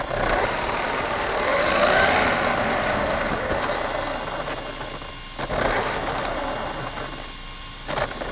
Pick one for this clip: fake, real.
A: real